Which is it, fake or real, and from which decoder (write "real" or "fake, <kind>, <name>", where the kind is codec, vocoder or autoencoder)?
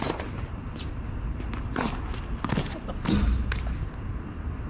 real